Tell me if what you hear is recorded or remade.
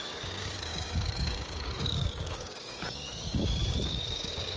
remade